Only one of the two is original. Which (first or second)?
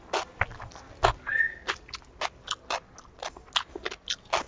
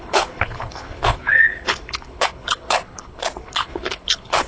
first